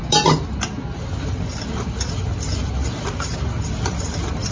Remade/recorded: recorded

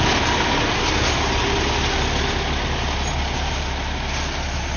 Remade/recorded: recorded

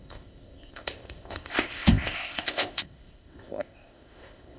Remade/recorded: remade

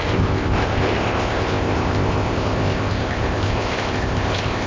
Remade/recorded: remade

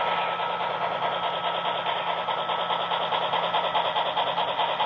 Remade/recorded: recorded